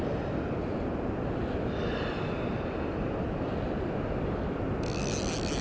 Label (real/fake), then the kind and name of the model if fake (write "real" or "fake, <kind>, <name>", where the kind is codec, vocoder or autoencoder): real